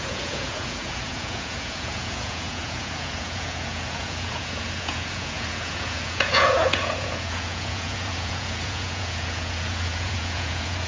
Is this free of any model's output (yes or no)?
no